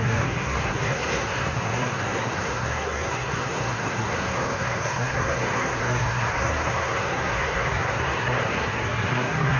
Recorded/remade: remade